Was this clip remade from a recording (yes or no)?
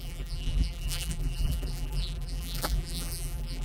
yes